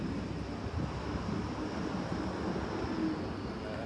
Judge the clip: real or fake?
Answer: real